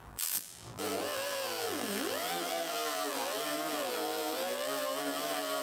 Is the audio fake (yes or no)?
yes